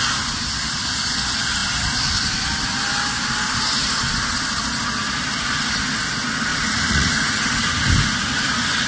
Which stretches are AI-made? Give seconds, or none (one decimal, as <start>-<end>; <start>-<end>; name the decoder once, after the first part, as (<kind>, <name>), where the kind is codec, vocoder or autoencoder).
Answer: 6.5-7.8 (vocoder, Vocos)